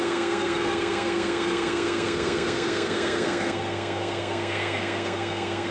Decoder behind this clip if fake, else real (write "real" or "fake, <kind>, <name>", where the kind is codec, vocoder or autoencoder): fake, codec, SNAC